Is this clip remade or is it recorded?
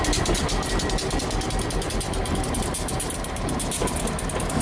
recorded